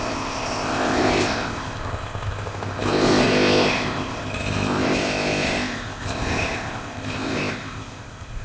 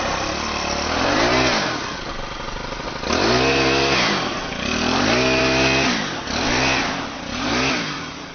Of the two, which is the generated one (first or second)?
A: first